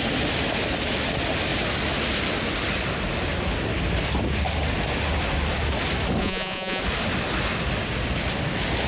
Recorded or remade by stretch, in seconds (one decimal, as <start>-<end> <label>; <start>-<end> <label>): 0.0-6.2 recorded; 6.2-6.8 remade; 6.8-8.9 recorded